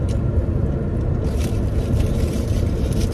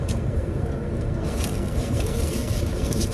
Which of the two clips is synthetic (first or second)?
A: second